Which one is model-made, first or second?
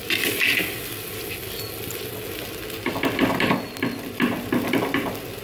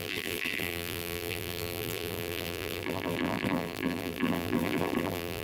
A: second